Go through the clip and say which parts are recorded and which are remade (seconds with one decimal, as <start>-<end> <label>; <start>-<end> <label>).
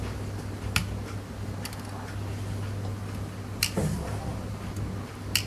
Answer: 0.0-5.5 recorded